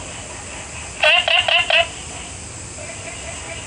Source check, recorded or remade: recorded